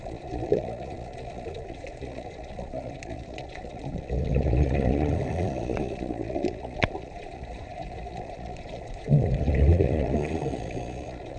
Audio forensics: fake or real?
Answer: fake